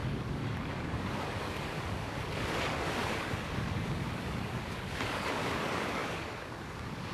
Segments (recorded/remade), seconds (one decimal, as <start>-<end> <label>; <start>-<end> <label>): 0.0-7.1 remade